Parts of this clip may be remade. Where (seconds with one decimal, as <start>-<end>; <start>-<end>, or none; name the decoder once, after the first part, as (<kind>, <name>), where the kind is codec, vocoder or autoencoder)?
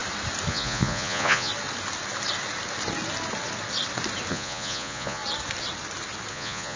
0.5-1.5 (vocoder, Vocos); 4.3-5.2; 6.3-6.8